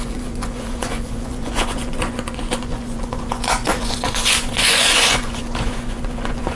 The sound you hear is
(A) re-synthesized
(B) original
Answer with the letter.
A